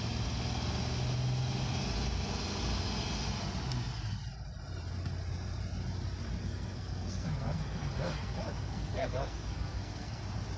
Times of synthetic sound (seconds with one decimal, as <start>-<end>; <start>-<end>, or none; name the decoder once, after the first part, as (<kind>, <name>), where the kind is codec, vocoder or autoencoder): 6.4-10.2 (codec, SNAC)